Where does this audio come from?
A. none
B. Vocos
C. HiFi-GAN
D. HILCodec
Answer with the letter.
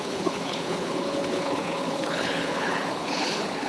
D